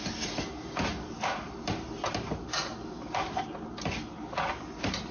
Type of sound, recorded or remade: recorded